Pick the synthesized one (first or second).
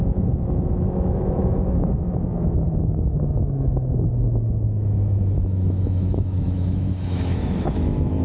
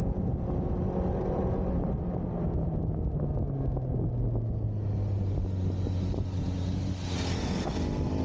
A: first